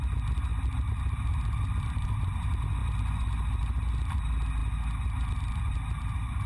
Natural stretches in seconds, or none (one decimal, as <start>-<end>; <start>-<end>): 0.0-6.5